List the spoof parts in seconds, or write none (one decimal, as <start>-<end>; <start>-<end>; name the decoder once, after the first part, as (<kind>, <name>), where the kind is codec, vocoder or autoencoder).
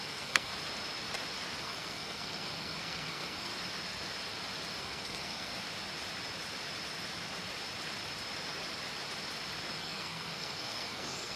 0.0-0.5 (codec, SNAC); 1.6-3.5; 4.8-5.5; 9.8-11.4